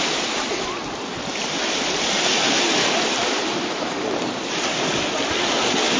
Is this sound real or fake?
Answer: real